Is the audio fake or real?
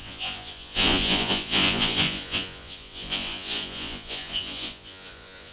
fake